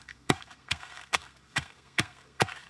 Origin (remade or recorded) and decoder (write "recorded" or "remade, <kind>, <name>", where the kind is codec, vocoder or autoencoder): remade, codec, SNAC